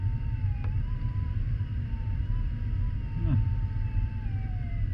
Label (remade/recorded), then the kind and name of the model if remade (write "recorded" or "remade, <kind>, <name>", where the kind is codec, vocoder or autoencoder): remade, vocoder, BigVGAN v2